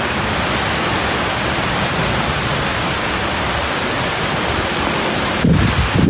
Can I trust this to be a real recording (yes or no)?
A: yes